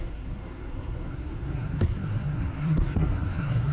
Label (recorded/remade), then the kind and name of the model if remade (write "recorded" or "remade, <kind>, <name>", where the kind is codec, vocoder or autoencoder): remade, codec, SNAC